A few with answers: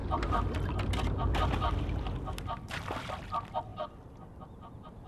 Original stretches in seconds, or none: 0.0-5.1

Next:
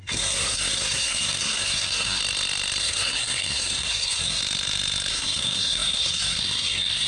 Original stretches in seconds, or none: 2.2-2.8; 4.4-5.1

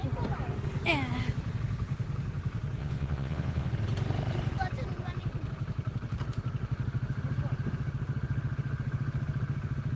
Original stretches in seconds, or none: 0.0-2.8; 3.7-10.0

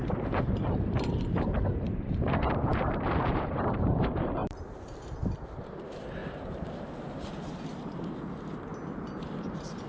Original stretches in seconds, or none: 8.7-9.9

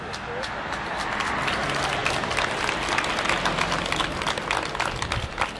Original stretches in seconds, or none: 0.0-5.6

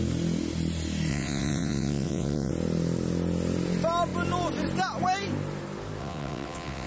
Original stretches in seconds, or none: 0.0-1.1; 2.5-6.0

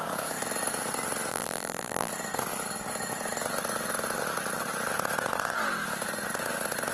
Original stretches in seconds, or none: 0.0-1.3; 2.1-6.9

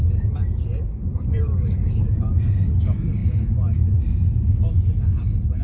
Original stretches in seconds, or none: 0.0-1.1; 2.3-5.6